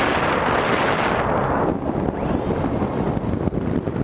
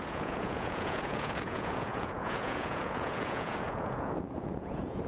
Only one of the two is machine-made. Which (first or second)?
second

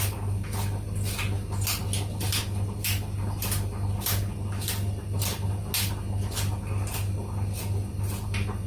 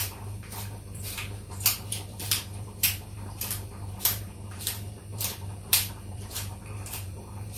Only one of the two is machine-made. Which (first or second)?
second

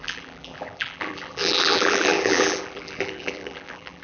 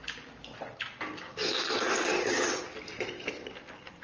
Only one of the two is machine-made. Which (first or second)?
first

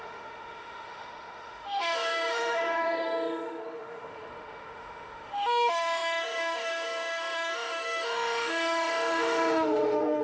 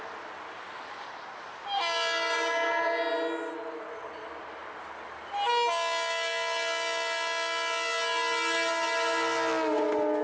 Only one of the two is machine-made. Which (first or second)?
first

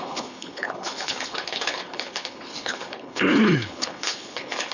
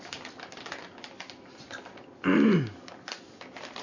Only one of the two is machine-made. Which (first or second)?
first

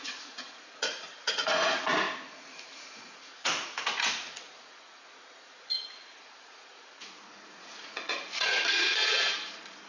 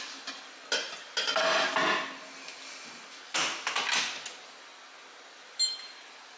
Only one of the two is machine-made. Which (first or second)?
first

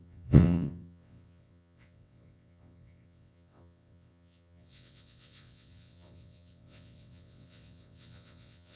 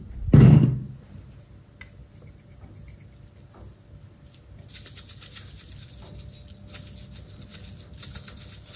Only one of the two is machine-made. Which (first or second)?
first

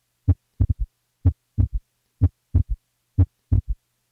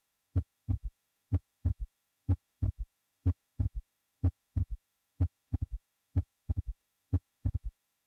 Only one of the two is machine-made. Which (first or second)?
second